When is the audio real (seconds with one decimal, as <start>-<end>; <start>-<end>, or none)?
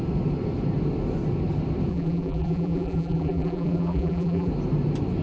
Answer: 0.0-1.9; 4.5-5.2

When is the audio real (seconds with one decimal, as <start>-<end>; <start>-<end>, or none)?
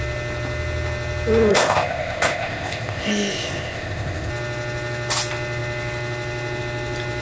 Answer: 0.0-1.5; 4.3-7.2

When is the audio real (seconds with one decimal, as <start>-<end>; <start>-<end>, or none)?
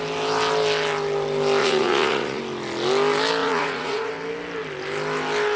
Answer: 0.0-1.6; 2.4-3.4; 4.1-5.6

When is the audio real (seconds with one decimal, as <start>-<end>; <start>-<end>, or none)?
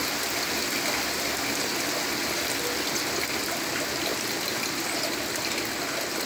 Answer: 0.0-6.3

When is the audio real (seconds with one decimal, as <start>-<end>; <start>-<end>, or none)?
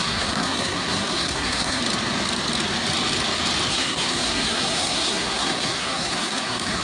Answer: 1.8-3.7